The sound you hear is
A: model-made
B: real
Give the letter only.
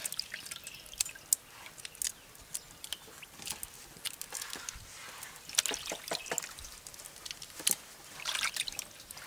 B